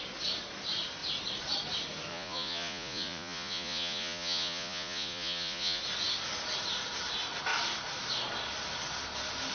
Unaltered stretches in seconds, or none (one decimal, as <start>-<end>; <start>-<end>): 0.0-2.1; 5.8-9.5